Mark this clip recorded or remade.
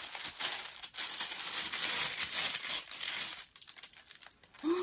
recorded